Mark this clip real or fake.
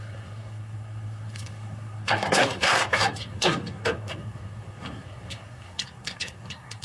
fake